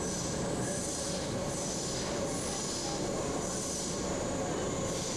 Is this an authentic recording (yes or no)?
yes